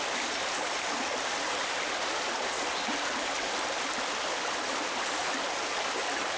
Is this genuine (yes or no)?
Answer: yes